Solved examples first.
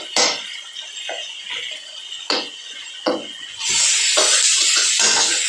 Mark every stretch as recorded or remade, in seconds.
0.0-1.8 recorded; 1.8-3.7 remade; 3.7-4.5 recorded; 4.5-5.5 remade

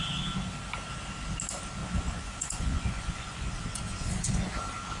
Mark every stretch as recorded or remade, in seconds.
0.0-1.8 recorded; 1.8-4.5 remade; 4.5-5.0 recorded

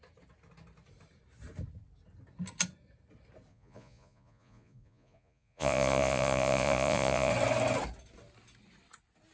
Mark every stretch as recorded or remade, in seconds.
0.0-3.5 recorded; 3.5-7.3 remade; 7.3-9.3 recorded

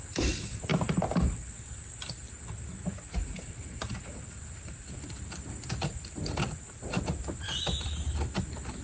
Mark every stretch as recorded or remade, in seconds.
0.0-0.7 remade; 0.7-1.4 recorded; 1.4-8.8 remade

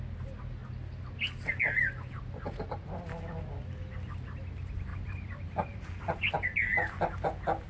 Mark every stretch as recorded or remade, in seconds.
0.0-4.9 recorded; 4.9-6.3 remade; 6.3-7.7 recorded

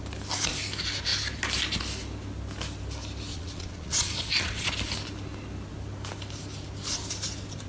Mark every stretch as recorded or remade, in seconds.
0.0-3.3 recorded; 3.3-4.7 remade; 4.7-7.7 recorded